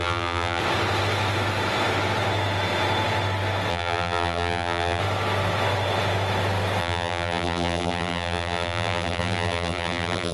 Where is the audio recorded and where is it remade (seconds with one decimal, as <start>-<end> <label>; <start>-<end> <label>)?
0.0-0.6 remade; 0.6-3.7 recorded; 3.7-5.0 remade; 5.0-6.8 recorded; 6.8-10.3 remade

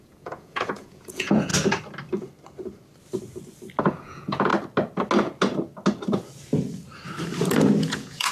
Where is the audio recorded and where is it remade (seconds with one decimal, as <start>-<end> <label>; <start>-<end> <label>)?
0.0-1.5 remade; 1.5-3.8 recorded; 3.8-4.5 remade; 4.5-7.8 recorded; 7.8-8.3 remade

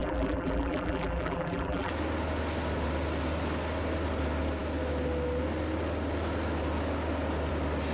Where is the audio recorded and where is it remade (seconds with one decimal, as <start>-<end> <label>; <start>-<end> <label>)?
0.0-1.9 remade; 1.9-7.9 recorded

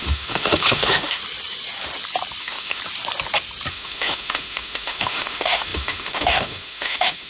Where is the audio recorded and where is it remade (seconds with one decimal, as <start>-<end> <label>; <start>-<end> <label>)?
0.0-1.2 remade; 1.2-2.4 recorded; 2.4-2.8 remade; 2.8-3.7 recorded; 3.7-7.3 remade